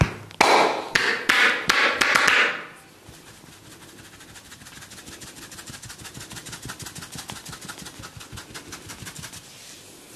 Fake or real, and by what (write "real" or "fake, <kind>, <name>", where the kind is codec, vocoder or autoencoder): real